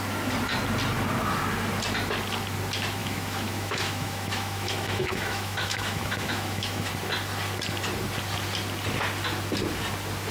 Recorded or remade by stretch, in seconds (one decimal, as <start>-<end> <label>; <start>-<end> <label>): 0.0-3.0 recorded; 3.0-6.9 remade; 6.9-10.3 recorded